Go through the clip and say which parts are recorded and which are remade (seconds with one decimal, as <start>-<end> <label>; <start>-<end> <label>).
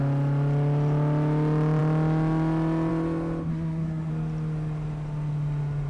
0.0-3.5 recorded; 3.5-4.1 remade; 4.1-5.9 recorded